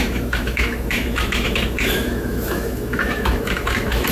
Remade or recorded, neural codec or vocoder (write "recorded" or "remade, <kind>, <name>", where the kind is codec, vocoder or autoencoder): remade, autoencoder, DAC-VAE